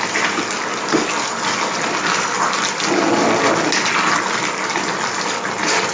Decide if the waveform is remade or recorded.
recorded